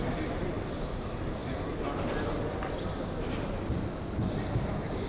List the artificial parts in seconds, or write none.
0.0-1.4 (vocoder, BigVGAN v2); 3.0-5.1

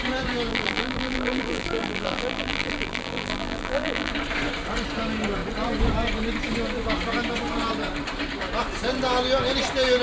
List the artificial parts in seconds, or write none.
0.5-4.1 (vocoder, BigVGAN v2)

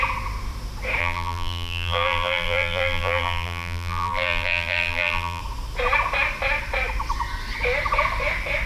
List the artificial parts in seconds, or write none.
1.0-5.4 (vocoder, BigVGAN v2)

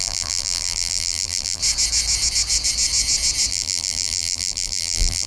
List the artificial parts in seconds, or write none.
0.0-1.6 (vocoder, BigVGAN v2); 3.5-5.3

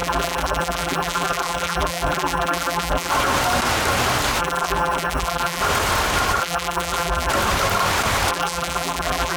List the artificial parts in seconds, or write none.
0.0-3.1 (vocoder, BigVGAN v2); 4.4-5.6; 6.4-7.3; 8.3-9.4

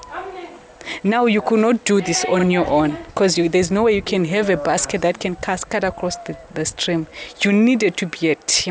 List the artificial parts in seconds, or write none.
none

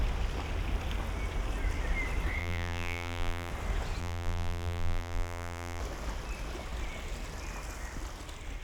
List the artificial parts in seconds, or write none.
2.4-3.5 (vocoder, BigVGAN v2); 4.0-5.8

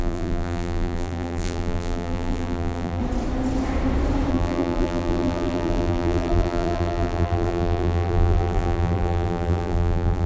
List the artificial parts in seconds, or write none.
0.0-3.0 (vocoder, BigVGAN v2); 4.3-10.3